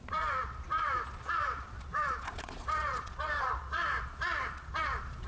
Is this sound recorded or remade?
remade